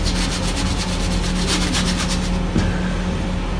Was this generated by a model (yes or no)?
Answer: no